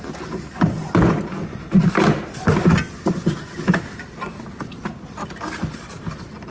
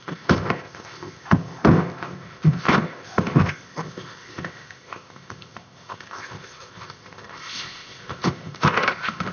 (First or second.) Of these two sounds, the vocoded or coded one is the second